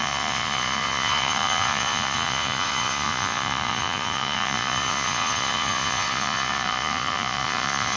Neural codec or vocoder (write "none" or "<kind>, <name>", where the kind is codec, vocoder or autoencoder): vocoder, Vocos